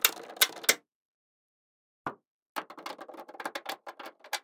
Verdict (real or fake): real